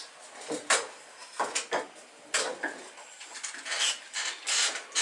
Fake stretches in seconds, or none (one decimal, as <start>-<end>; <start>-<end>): none